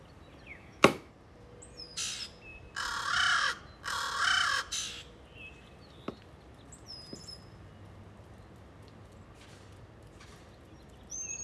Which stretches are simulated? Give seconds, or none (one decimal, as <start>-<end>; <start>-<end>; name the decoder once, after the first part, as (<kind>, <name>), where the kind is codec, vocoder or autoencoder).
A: 0.5-1.1 (autoencoder, DAC-VAE)